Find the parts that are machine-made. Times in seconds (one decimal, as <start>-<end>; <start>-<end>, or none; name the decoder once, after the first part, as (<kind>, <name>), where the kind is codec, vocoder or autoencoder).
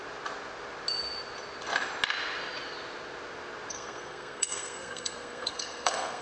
3.7-6.2 (codec, SNAC)